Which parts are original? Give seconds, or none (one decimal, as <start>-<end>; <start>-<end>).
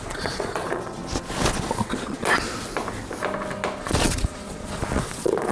1.0-1.7; 2.5-3.8